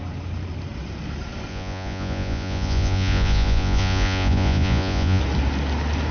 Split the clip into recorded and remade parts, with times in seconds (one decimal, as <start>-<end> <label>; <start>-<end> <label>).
0.0-1.5 recorded; 1.5-5.2 remade; 5.2-6.1 recorded